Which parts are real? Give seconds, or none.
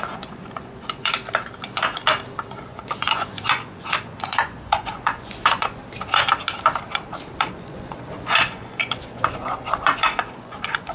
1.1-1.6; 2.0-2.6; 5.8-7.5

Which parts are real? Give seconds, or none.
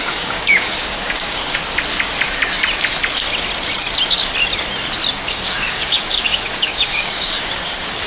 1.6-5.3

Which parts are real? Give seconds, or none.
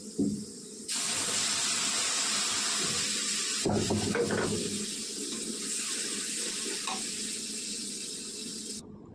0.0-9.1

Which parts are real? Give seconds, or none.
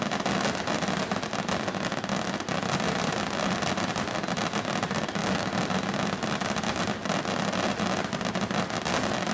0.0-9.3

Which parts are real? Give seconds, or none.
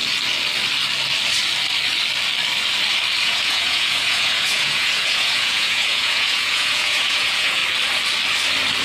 0.0-3.2; 7.6-8.8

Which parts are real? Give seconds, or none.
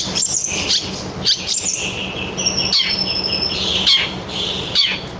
0.0-5.2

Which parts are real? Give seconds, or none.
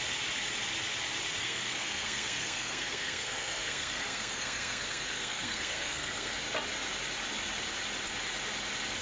0.0-1.4; 6.4-9.0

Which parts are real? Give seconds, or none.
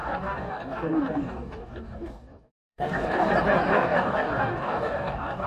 3.3-3.7